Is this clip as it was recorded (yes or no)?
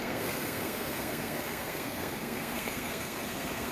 no